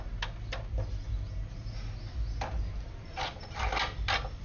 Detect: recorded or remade recorded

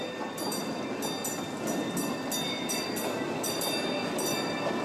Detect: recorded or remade recorded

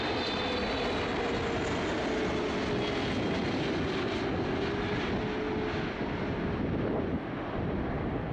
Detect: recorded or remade recorded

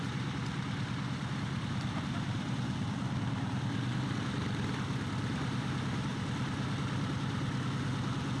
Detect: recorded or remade recorded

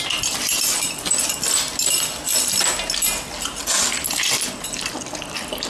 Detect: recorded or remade recorded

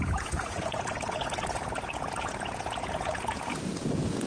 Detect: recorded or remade remade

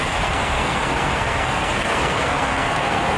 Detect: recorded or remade remade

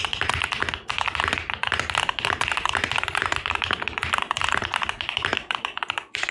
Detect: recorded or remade remade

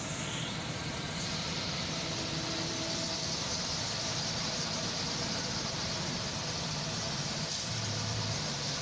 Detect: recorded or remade remade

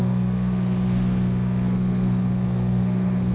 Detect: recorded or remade remade